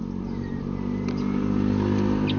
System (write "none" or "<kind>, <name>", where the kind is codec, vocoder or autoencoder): none